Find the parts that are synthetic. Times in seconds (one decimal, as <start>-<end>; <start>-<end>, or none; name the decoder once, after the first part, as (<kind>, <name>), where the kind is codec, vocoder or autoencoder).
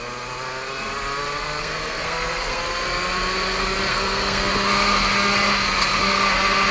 1.4-2.6 (codec, SNAC); 3.9-4.5